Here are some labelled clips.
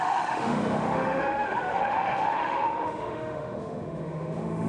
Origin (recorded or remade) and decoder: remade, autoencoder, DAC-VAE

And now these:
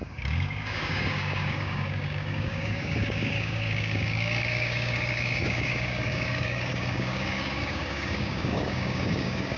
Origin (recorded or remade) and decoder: remade, codec, DAC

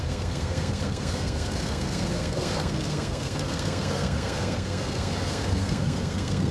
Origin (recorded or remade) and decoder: remade, codec, SNAC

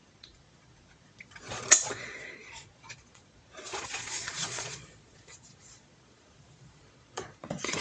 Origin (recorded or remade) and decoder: remade, vocoder, Vocos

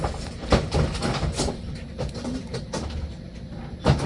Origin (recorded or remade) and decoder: recorded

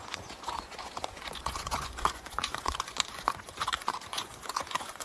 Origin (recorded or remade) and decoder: remade, vocoder, Vocos